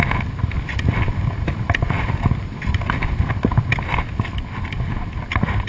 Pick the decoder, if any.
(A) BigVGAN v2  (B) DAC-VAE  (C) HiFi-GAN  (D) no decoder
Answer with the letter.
D